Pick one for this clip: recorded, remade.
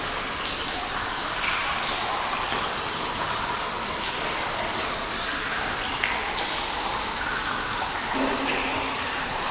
recorded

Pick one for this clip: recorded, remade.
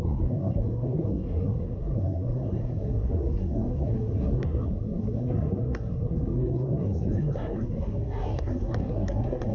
remade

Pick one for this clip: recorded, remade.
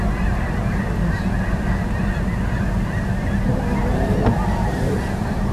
recorded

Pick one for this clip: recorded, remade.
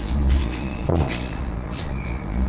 remade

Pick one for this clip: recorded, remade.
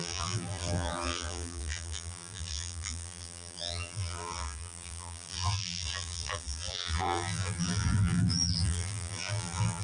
remade